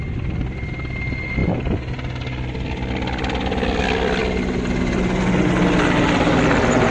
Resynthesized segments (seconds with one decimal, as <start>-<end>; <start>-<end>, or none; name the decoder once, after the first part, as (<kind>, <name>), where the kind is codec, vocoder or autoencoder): none

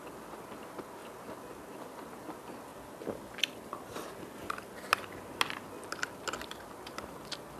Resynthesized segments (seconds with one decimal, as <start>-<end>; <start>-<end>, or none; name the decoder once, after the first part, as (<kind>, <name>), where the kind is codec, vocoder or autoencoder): none